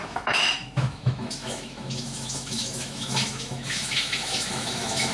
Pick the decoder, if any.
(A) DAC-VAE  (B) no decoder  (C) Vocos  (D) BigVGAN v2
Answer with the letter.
A